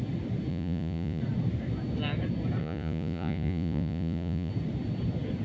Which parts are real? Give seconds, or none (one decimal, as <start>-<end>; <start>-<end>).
0.0-0.5; 1.2-2.6; 4.5-5.4